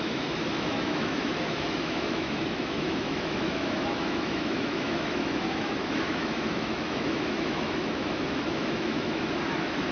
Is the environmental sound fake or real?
fake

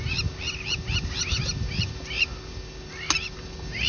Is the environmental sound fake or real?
real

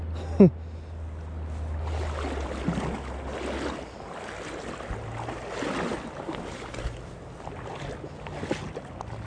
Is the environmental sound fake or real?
real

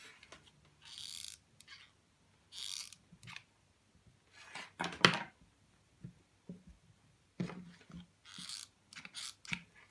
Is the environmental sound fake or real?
real